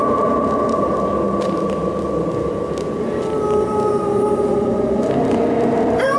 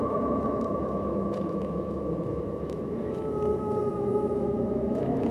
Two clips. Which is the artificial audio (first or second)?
second